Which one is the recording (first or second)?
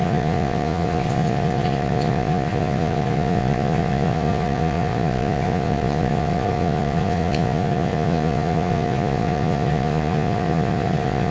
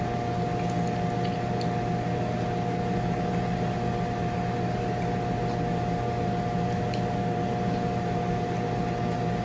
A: second